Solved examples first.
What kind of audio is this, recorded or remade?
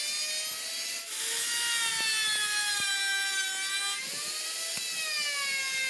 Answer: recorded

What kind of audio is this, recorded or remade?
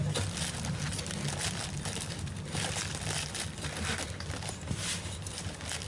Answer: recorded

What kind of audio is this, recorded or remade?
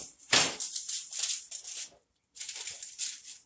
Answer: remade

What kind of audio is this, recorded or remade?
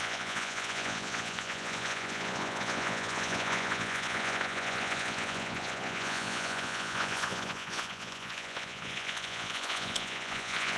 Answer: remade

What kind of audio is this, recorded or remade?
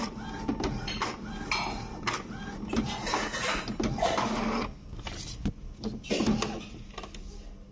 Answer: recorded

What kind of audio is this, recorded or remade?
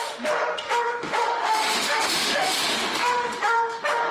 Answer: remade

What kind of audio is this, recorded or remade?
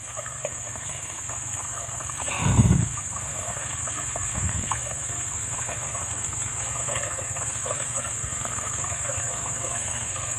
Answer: remade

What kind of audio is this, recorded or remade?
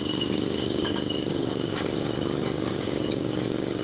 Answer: remade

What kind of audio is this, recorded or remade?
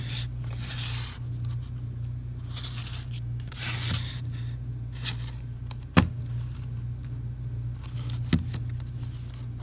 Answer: recorded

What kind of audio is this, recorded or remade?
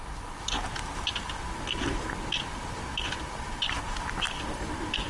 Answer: recorded